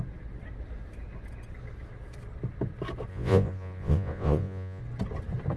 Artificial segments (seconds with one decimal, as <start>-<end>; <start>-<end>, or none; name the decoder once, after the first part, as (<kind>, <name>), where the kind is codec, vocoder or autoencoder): 3.1-4.8 (vocoder, Vocos)

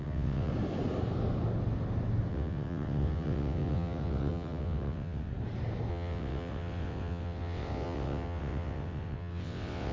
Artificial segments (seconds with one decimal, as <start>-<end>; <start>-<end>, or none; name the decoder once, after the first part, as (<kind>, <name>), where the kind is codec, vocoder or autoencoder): 0.0-0.5 (vocoder, WaveNeXt); 2.3-5.3; 5.9-9.9

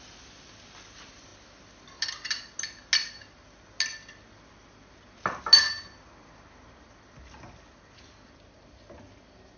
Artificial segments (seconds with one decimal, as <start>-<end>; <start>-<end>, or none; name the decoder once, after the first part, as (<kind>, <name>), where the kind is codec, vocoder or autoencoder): none

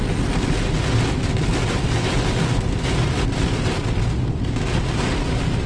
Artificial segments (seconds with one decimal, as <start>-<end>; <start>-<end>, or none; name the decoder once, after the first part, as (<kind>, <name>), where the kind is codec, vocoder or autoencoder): none

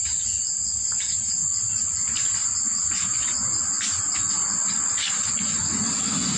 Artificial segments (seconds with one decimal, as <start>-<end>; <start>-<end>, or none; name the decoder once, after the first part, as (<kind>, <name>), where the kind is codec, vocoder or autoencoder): none